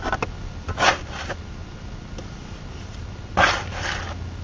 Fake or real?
real